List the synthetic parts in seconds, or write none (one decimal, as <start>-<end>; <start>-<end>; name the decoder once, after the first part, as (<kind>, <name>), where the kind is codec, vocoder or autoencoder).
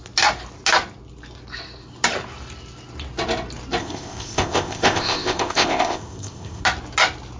3.8-6.6 (codec, ZipCodec)